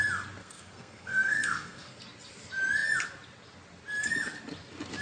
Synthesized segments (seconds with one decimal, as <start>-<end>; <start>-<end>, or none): 0.4-2.0